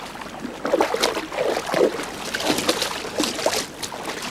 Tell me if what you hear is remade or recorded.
recorded